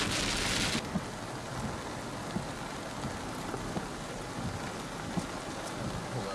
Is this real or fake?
real